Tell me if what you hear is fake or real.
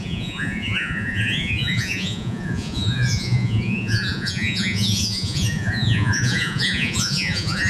fake